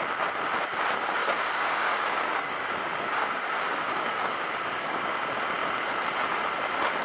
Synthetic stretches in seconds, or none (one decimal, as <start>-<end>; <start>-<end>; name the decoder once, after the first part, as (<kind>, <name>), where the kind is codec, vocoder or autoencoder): 1.2-5.1 (codec, DAC)